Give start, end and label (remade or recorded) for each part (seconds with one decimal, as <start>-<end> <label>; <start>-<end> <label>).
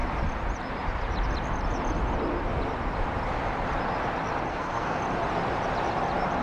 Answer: 0.0-4.5 recorded; 4.5-5.0 remade; 5.0-6.4 recorded